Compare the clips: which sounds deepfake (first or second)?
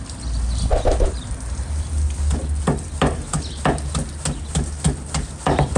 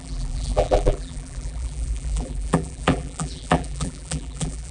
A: second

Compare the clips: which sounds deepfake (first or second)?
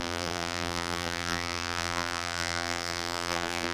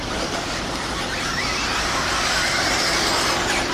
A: first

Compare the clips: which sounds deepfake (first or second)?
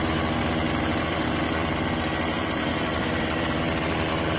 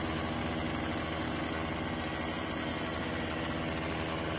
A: first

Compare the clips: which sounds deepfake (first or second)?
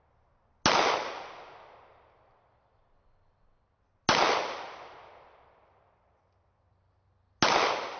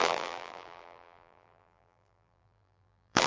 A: second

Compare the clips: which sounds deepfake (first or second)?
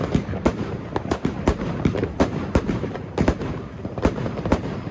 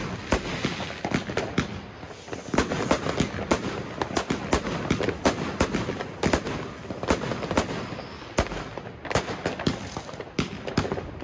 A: first